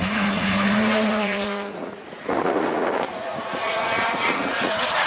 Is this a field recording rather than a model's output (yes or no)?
no